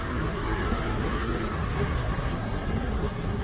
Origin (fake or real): fake